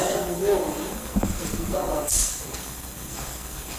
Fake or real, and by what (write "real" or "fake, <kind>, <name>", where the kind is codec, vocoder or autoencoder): fake, codec, SNAC